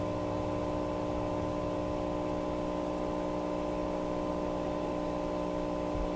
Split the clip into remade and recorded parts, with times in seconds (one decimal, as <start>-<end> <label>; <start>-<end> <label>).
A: 0.0-6.2 recorded